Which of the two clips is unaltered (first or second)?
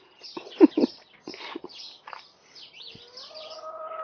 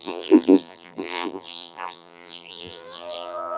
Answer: first